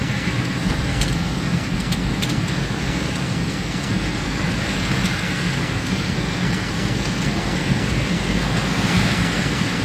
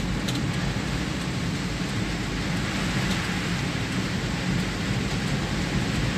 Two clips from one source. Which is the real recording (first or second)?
second